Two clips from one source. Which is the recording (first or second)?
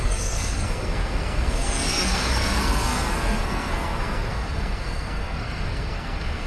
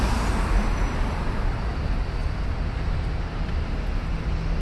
second